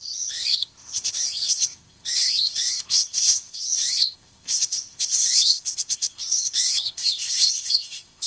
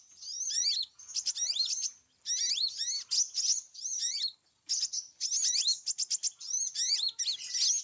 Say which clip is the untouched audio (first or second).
second